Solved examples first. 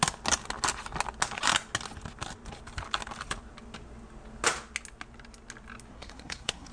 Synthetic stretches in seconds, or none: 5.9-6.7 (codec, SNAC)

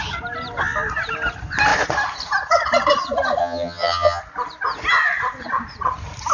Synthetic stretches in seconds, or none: 3.4-4.2 (vocoder, HiFi-GAN)

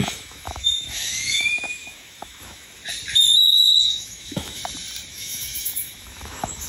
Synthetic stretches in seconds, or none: 0.0-2.8 (autoencoder, DAC-VAE); 3.5-4.6; 5.1-6.7

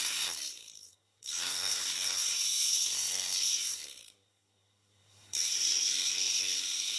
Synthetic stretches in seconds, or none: 0.0-7.0 (codec, SNAC)

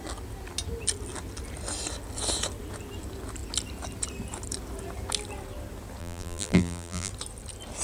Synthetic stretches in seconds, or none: 6.0-7.1 (vocoder, BigVGAN v2)

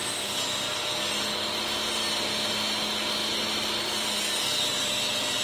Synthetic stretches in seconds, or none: none